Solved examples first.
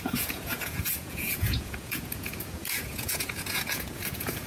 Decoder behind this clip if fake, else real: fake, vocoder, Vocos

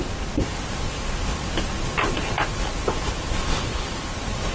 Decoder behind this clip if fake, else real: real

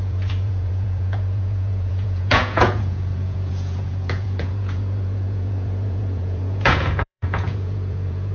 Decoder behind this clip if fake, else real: fake, vocoder, Vocos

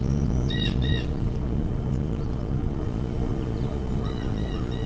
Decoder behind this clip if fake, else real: fake, vocoder, Vocos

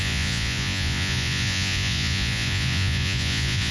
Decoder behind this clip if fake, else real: fake, vocoder, Vocos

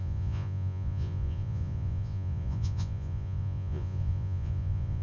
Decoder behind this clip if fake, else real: fake, vocoder, Vocos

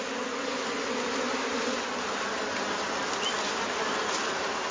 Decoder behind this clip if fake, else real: real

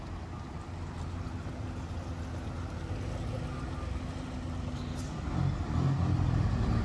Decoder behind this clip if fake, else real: real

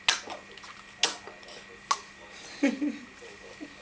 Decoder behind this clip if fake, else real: real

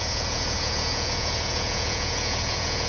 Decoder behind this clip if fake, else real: fake, vocoder, Vocos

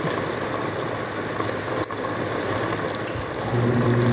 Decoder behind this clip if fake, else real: real